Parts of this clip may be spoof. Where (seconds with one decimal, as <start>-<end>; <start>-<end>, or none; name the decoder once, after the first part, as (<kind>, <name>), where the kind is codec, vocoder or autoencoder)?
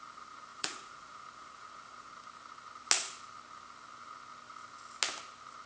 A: 0.5-2.1 (vocoder, Vocos)